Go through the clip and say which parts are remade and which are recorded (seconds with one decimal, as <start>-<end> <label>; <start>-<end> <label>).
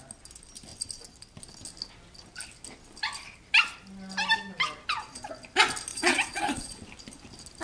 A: 0.0-5.9 recorded; 5.9-6.8 remade; 6.8-7.6 recorded